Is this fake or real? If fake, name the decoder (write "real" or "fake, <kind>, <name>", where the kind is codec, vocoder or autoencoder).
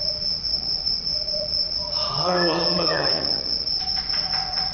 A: fake, vocoder, Vocos